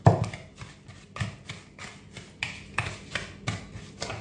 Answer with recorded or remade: recorded